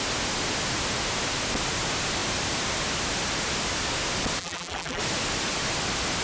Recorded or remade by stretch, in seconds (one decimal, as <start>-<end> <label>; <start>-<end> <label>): 0.0-4.4 recorded; 4.4-5.0 remade; 5.0-6.2 recorded